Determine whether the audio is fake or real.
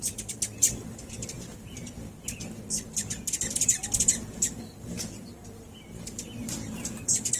real